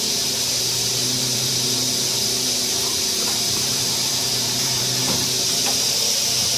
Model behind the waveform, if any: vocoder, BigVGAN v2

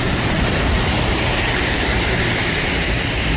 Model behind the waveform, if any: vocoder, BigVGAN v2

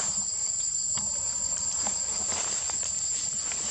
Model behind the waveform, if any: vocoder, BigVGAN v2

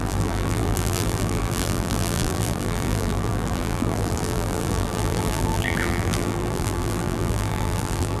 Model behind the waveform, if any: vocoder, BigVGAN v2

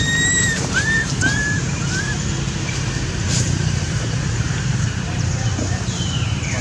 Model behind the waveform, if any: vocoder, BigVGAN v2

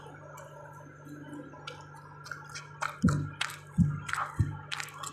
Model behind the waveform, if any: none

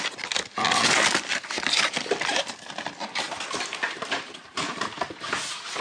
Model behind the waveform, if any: vocoder, BigVGAN v2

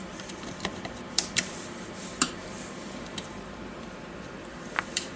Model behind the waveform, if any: vocoder, BigVGAN v2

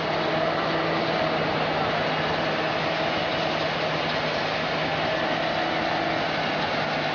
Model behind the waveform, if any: none